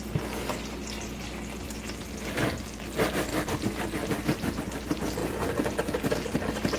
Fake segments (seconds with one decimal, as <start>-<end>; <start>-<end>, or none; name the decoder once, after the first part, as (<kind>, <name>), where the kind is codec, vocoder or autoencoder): 3.3-4.6 (vocoder, BigVGAN v2)